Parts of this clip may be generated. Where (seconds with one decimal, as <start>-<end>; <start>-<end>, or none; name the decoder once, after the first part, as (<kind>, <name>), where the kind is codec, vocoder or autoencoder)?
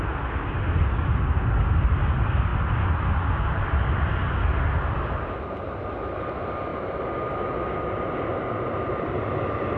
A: none